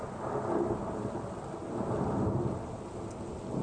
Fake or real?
real